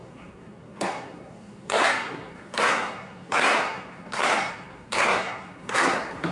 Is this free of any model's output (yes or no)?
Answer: no